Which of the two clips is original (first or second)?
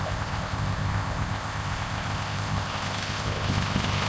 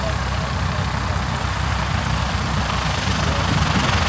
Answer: second